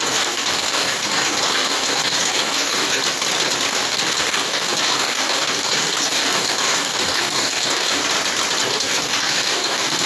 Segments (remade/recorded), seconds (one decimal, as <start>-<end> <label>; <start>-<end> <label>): 0.0-3.0 remade; 3.0-3.7 recorded; 3.7-8.0 remade; 8.0-8.6 recorded; 8.6-10.1 remade